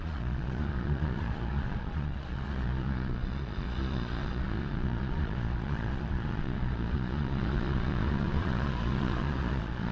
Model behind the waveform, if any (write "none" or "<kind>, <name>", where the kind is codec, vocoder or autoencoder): vocoder, Vocos